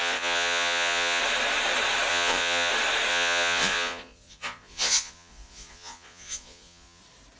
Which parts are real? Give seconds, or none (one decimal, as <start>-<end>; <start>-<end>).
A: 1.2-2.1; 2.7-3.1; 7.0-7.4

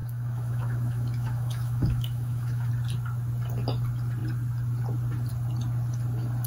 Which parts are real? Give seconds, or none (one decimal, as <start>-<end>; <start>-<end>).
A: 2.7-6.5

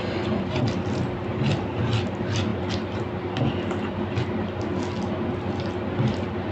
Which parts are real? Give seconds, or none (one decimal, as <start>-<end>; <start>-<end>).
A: 0.0-6.5

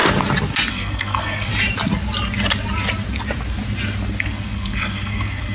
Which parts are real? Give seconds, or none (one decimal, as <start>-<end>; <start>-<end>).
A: 0.0-0.7; 1.5-4.2

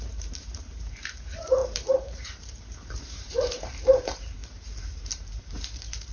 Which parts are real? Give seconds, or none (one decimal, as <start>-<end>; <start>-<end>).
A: none

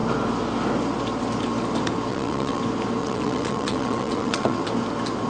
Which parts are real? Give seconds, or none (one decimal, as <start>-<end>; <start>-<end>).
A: 0.0-2.1; 2.6-3.0; 4.6-5.3

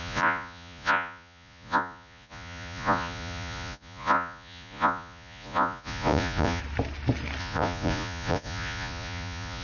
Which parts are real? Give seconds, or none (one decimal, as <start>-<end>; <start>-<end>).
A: 6.6-7.4